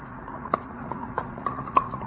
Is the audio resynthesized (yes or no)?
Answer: yes